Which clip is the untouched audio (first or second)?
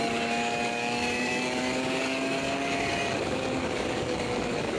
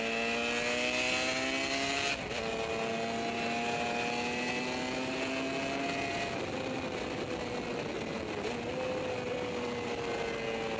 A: second